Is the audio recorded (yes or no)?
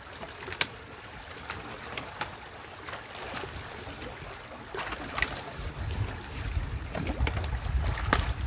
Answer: yes